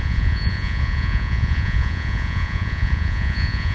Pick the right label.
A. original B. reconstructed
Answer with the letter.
B